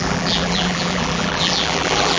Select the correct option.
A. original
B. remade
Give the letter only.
B